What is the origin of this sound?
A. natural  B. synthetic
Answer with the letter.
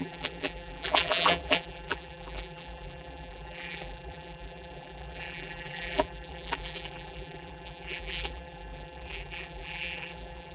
B